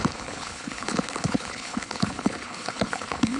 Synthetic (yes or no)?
yes